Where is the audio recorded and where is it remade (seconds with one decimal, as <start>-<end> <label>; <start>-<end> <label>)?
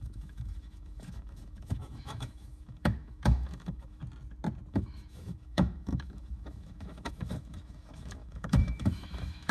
0.0-4.0 remade; 4.0-4.7 recorded; 4.7-9.5 remade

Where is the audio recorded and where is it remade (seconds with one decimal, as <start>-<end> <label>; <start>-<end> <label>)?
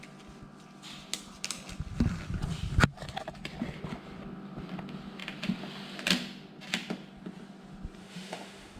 0.0-8.0 recorded; 8.0-8.8 remade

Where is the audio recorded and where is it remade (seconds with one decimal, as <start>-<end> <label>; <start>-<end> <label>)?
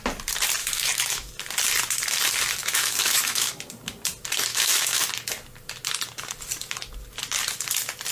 0.0-0.6 recorded; 0.6-1.3 remade; 1.3-2.6 recorded; 2.6-3.5 remade; 3.5-4.5 recorded; 4.5-5.1 remade; 5.1-8.1 recorded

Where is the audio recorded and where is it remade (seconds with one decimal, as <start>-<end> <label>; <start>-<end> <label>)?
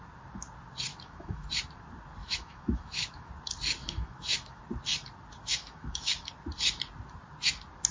0.0-0.9 recorded; 0.9-1.5 remade; 1.5-2.2 recorded; 2.2-3.3 remade; 3.3-3.8 recorded; 3.8-4.6 remade; 4.6-5.5 recorded; 5.5-6.3 remade; 6.3-7.9 recorded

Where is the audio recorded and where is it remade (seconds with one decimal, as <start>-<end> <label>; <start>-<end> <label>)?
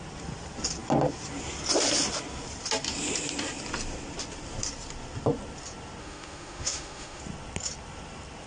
0.0-6.0 recorded; 6.0-7.2 remade; 7.2-8.5 recorded